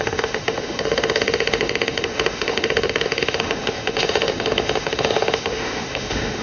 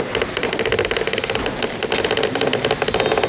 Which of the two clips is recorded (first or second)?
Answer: second